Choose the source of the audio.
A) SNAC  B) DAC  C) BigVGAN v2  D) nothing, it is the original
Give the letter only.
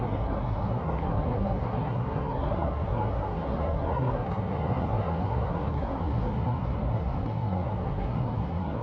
A